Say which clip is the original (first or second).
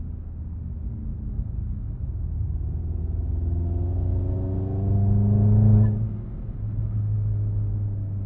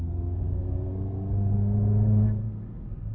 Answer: first